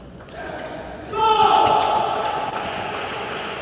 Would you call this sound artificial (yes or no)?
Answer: yes